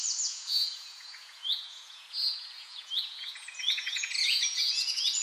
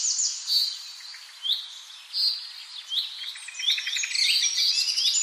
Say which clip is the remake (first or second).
first